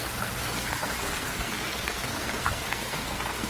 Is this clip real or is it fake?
fake